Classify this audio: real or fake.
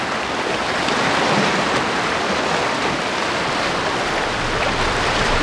real